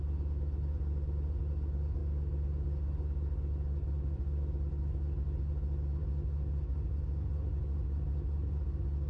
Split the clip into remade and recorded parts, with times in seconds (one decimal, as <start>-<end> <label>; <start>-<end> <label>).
0.0-9.1 recorded